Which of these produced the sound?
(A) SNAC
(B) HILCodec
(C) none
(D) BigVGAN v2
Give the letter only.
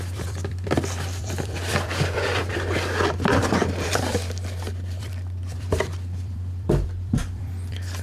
D